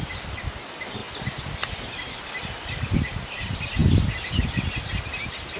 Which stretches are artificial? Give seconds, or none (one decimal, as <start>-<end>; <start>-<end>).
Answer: none